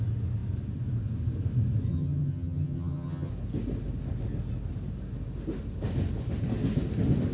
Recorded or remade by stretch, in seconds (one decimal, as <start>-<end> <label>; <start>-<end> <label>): 0.0-1.9 recorded; 1.9-3.3 remade; 3.3-7.3 recorded